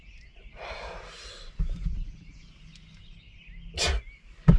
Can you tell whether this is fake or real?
real